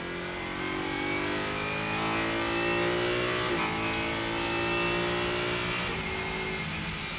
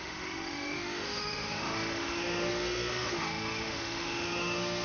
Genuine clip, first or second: first